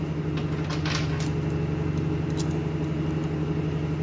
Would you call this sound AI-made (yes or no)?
no